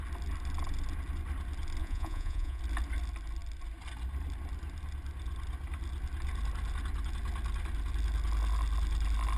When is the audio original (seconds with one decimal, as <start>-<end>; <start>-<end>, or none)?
0.0-1.8; 2.6-9.4